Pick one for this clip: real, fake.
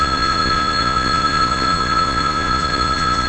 fake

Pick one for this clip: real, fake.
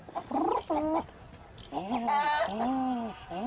real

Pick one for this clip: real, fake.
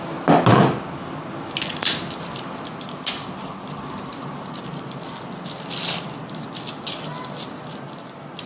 real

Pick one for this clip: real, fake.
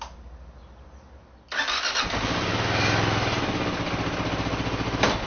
real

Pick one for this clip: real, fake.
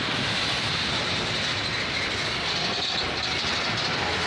real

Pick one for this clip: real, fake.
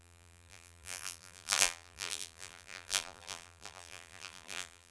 fake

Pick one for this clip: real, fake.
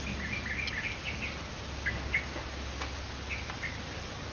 real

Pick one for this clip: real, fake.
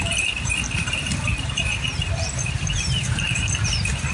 fake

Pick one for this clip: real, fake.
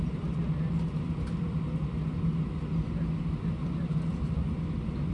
real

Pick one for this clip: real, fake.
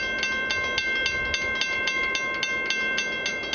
real